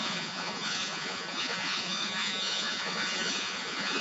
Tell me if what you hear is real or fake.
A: fake